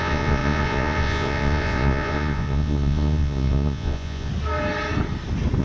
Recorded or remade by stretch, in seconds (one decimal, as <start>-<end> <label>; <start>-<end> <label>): 0.0-4.3 remade; 4.3-5.6 recorded